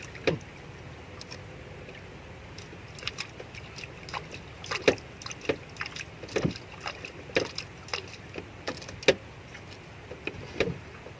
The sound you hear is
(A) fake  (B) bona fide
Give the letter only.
B